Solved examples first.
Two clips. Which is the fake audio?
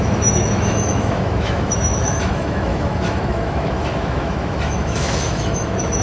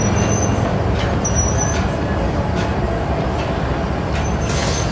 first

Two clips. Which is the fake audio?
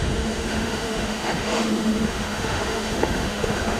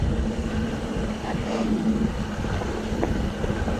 first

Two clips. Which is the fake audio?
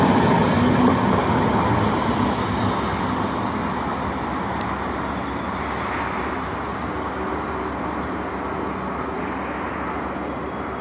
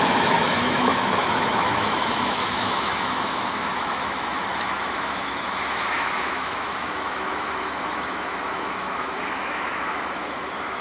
second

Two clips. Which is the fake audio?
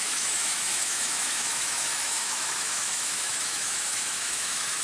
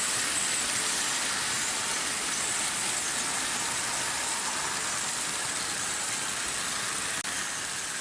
first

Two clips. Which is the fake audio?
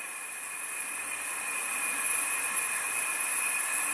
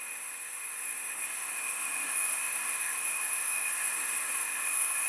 second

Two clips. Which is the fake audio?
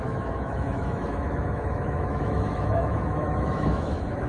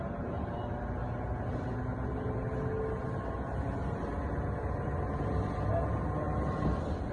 first